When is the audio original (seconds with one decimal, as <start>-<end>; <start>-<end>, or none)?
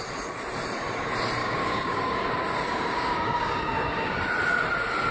0.0-1.4; 4.2-5.1